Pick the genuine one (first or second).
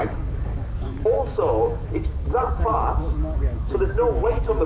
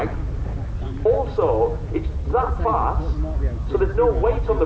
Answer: second